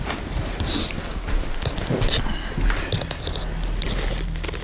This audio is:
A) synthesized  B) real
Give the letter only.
B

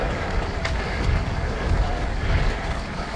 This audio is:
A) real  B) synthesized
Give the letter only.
B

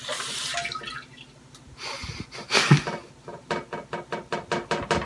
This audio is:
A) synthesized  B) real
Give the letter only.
B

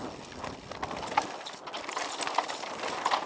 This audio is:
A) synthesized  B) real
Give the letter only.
B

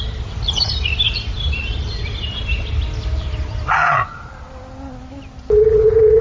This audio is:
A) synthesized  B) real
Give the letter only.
B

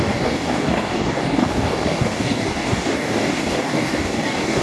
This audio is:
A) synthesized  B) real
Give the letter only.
A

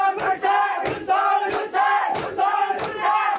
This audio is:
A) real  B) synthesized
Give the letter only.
A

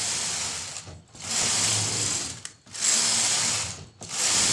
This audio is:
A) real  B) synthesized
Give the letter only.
A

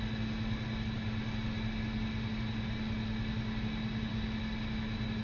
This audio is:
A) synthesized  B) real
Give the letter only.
B